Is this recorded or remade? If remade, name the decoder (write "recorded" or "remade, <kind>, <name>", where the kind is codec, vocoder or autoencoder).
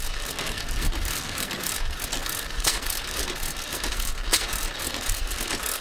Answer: remade, codec, SNAC